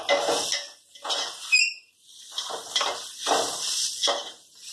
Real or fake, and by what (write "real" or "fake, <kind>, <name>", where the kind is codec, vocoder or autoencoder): real